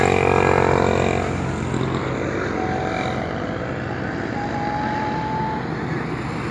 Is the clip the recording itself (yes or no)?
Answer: yes